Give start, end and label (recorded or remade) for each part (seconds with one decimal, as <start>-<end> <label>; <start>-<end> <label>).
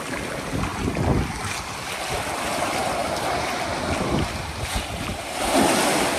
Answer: 0.0-6.2 recorded